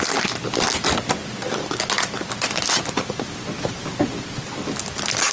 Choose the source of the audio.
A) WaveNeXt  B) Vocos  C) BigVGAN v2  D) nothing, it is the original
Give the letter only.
D